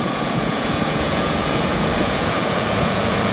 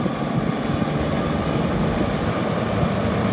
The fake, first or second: first